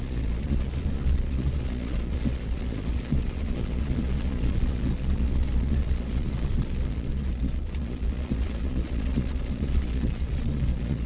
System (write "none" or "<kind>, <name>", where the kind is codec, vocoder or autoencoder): vocoder, Vocos